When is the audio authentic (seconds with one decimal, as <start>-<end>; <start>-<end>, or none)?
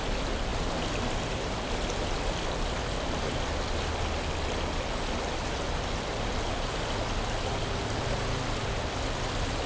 0.0-9.7